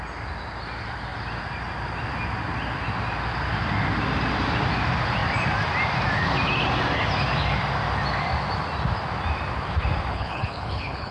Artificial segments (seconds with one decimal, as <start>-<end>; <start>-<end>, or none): 10.1-11.1